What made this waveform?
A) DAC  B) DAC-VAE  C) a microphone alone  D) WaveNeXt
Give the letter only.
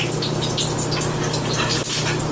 C